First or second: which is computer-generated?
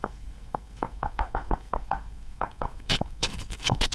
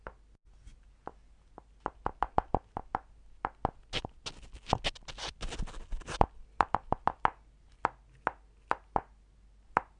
first